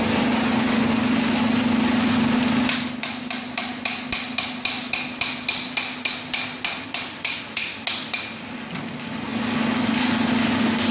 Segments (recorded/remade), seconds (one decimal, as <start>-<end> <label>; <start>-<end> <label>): 0.0-10.9 recorded